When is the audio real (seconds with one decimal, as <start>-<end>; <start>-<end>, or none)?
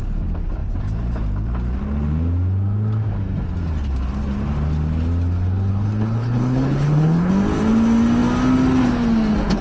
0.0-5.7; 7.3-9.6